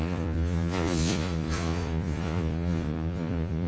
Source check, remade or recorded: remade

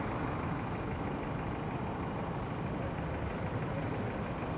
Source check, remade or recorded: recorded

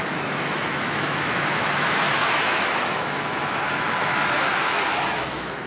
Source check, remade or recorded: remade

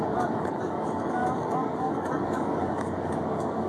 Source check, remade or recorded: remade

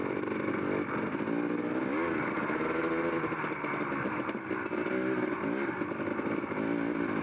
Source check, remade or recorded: recorded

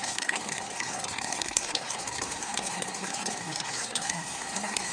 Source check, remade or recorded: remade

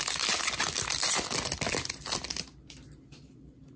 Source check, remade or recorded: recorded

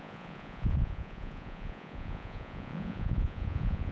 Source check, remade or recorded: remade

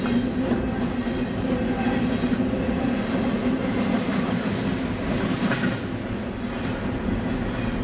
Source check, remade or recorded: recorded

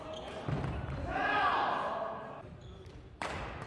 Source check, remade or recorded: recorded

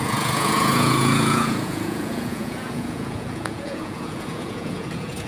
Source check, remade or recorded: remade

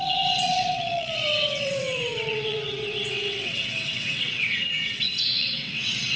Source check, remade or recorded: remade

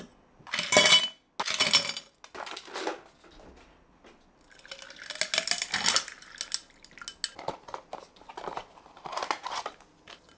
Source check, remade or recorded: recorded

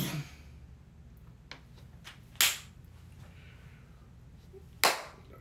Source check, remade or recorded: recorded